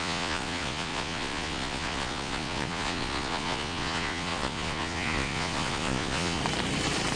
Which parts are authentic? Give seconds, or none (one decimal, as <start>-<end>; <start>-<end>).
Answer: 6.4-7.2